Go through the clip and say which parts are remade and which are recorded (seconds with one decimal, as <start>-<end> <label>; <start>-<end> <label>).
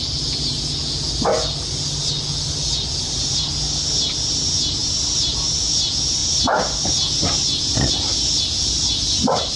0.0-9.6 recorded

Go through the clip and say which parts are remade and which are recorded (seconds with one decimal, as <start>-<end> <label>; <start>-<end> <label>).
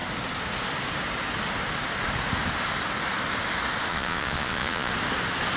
0.0-3.9 recorded; 3.9-4.9 remade; 4.9-5.6 recorded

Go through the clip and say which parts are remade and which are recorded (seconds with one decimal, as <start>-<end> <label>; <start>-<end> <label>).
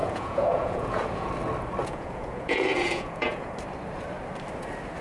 0.0-1.3 remade; 1.3-1.8 recorded; 1.8-3.5 remade; 3.5-5.0 recorded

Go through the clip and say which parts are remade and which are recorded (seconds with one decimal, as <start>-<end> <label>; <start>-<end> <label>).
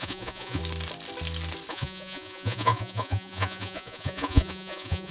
0.0-0.6 remade; 0.6-1.7 recorded; 1.7-5.1 remade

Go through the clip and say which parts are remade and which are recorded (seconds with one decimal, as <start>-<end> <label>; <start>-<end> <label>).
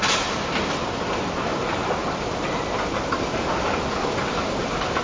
0.0-5.0 recorded